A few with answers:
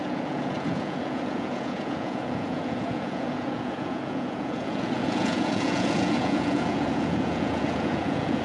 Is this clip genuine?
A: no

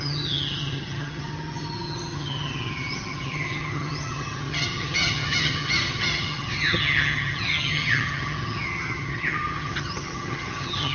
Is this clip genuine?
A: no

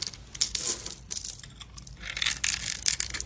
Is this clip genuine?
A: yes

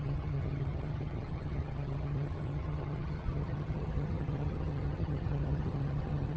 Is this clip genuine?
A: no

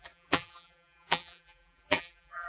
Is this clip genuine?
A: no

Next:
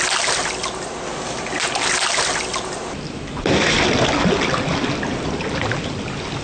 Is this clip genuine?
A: yes